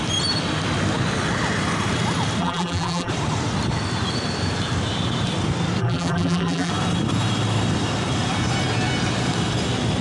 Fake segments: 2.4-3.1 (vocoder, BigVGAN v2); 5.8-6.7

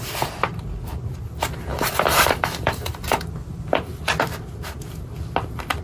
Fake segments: 1.7-4.1 (vocoder, BigVGAN v2)